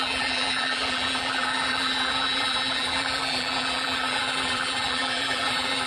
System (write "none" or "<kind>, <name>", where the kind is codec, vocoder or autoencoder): vocoder, BigVGAN v2